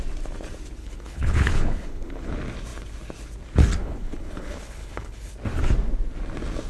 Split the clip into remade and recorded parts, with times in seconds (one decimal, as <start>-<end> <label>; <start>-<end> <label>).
0.0-0.8 recorded; 0.8-2.3 remade; 2.3-3.8 recorded; 3.8-5.3 remade; 5.3-6.7 recorded

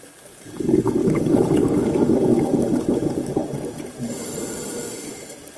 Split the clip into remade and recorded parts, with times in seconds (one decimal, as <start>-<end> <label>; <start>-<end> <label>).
0.0-3.4 remade; 3.4-5.6 recorded

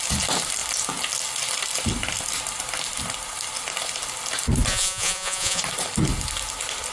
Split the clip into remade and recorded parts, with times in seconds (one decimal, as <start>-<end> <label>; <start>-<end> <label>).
0.0-4.7 recorded; 4.7-5.6 remade; 5.6-6.9 recorded